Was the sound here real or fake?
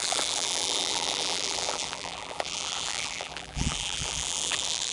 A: fake